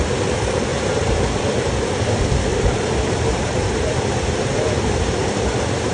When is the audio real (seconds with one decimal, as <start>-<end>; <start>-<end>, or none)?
0.0-0.7; 1.4-2.5; 5.1-5.9